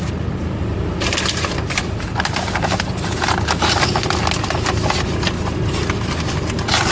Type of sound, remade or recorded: recorded